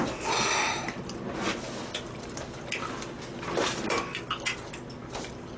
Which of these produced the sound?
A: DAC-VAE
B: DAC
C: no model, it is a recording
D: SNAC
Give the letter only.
C